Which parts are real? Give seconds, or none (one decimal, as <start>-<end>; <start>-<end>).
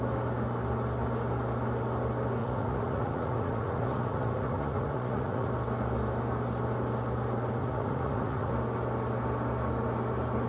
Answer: 0.0-2.4; 5.5-7.6; 8.5-10.5